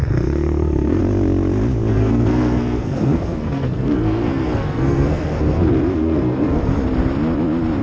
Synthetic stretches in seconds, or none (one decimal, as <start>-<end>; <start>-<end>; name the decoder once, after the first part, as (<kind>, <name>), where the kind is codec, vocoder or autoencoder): 0.0-1.0 (codec, SNAC); 1.9-6.7